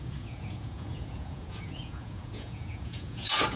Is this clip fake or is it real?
fake